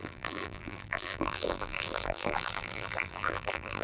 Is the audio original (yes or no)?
no